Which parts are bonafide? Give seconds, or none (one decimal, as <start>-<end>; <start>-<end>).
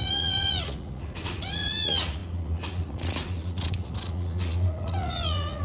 none